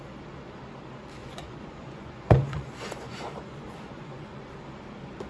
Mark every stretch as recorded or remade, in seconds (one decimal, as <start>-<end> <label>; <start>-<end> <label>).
0.0-1.2 recorded; 1.2-4.4 remade; 4.4-5.3 recorded